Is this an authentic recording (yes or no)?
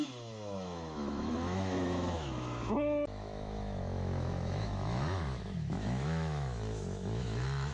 no